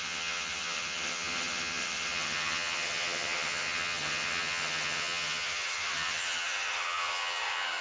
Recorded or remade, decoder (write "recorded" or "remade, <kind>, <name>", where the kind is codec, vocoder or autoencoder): remade, vocoder, HiFi-GAN